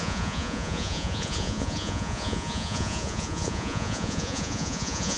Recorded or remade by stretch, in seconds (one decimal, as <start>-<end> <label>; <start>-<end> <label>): 0.0-5.2 remade